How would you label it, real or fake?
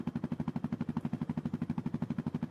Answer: fake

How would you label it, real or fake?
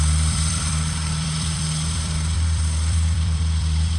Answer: fake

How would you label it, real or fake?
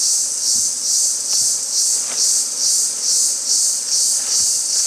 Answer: real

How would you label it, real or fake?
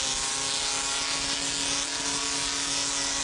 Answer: real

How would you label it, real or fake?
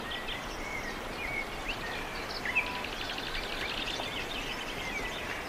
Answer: real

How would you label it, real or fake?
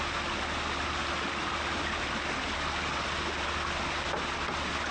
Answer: real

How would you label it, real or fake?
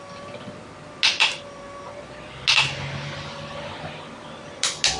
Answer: real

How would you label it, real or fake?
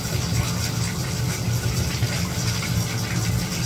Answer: real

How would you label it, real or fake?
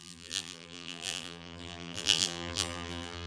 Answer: fake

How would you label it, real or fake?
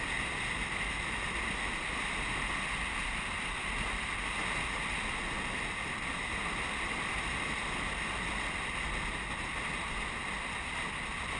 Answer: real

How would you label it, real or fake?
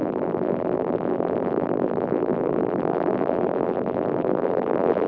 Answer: fake